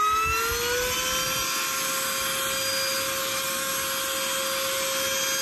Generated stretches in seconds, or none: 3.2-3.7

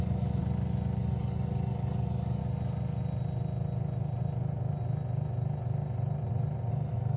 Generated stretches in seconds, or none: 0.0-0.4; 1.0-2.4; 6.7-7.2

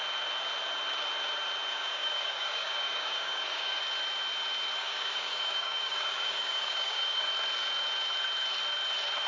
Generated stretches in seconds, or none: 1.7-3.8; 4.8-7.3